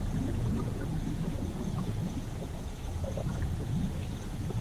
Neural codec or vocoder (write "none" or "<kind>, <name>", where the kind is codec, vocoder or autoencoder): vocoder, Vocos